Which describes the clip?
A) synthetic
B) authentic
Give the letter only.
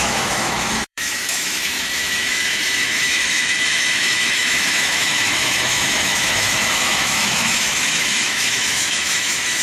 A